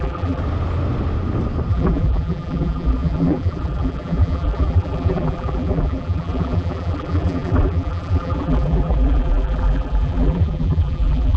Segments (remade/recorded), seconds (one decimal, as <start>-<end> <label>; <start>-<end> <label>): 0.0-0.4 remade; 0.4-1.7 recorded; 1.7-11.4 remade